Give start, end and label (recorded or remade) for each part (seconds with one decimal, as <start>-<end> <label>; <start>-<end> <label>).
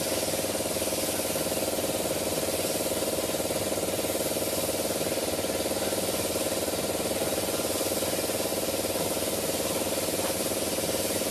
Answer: 0.0-8.5 recorded; 8.5-11.3 remade